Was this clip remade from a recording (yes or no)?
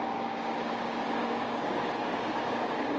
yes